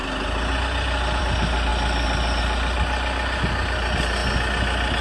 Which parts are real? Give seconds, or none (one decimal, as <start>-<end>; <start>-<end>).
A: 0.0-5.0